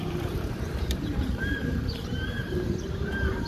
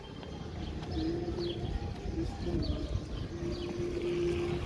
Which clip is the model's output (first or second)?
first